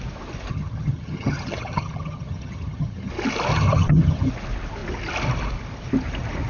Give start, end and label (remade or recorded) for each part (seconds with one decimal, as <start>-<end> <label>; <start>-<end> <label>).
0.0-0.5 recorded; 0.5-3.1 remade; 3.1-3.5 recorded; 3.5-4.3 remade; 4.3-6.5 recorded